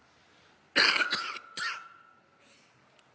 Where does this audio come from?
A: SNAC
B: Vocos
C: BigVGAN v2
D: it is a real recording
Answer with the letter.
D